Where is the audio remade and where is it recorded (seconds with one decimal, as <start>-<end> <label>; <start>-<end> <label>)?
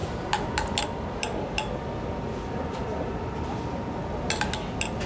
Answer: 0.0-5.1 recorded